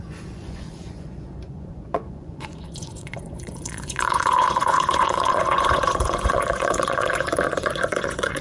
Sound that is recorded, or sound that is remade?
remade